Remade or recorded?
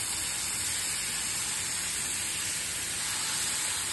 recorded